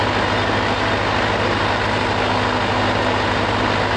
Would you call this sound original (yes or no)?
yes